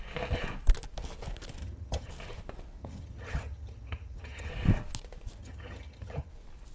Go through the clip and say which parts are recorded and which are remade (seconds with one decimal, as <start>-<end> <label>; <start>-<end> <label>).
0.0-1.6 recorded; 1.6-2.1 remade; 2.1-2.8 recorded; 2.8-4.5 remade; 4.5-5.4 recorded; 5.4-6.3 remade; 6.3-6.7 recorded